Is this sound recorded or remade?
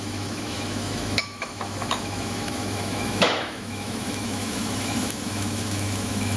remade